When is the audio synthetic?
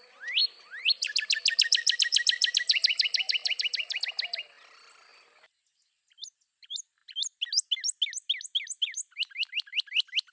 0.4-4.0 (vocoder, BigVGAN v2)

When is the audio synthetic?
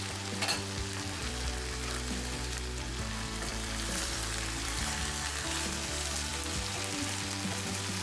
1.2-2.9 (vocoder, BigVGAN v2); 3.5-5.0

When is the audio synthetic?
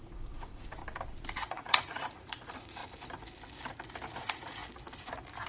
0.0-0.8 (vocoder, Vocos); 1.5-2.8; 4.1-4.6